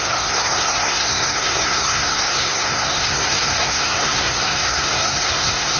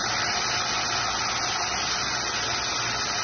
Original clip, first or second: second